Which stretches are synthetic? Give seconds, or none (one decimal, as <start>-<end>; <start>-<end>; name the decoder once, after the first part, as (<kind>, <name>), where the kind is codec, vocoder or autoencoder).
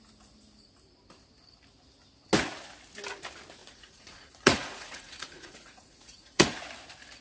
3.6-6.6 (vocoder, Vocos)